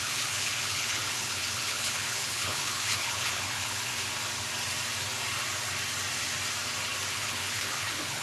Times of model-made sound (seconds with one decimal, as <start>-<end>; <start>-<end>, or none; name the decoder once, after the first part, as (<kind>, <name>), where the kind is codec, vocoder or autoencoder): 0.0-3.9 (codec, HILCodec); 7.1-8.2